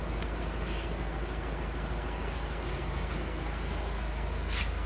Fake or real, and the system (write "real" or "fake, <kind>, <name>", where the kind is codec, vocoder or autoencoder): fake, codec, SNAC